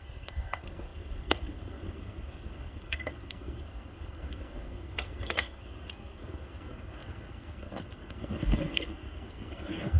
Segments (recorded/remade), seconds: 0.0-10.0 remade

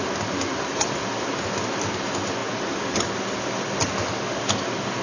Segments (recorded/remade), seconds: 0.0-5.0 recorded

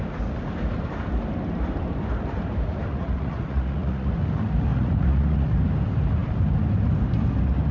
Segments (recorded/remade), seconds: 0.0-2.9 recorded; 2.9-4.1 remade; 4.1-4.7 recorded; 4.7-5.6 remade; 5.6-7.7 recorded

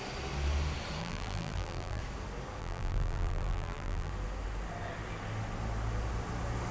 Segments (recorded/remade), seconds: 0.0-1.0 recorded; 1.0-2.0 remade; 2.0-2.6 recorded; 2.6-4.1 remade; 4.1-6.7 recorded

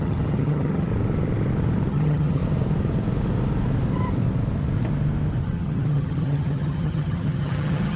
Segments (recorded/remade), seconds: 0.0-0.9 remade; 0.9-1.9 recorded; 1.9-2.4 remade; 2.4-5.4 recorded; 5.4-8.0 remade

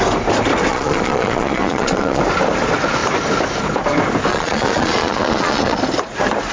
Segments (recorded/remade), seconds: 0.0-0.7 recorded; 0.7-2.2 remade; 2.2-4.3 recorded; 4.3-5.8 remade; 5.8-6.5 recorded

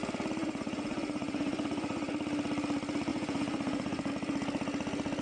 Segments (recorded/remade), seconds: 0.0-0.4 recorded; 0.4-2.1 remade; 2.1-3.1 recorded; 3.1-4.1 remade; 4.1-5.2 recorded